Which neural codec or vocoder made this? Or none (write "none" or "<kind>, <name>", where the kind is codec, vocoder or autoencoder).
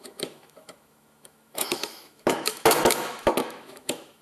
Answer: autoencoder, DAC-VAE